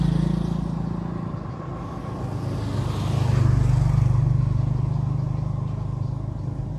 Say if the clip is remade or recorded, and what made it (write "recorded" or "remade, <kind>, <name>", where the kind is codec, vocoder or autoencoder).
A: recorded